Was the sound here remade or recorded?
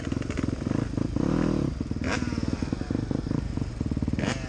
recorded